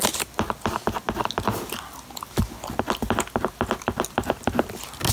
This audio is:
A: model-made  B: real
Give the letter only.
B